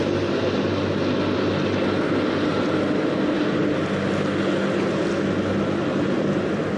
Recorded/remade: recorded